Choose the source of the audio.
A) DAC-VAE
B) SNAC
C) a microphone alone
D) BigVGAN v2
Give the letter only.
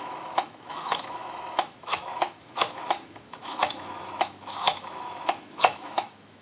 A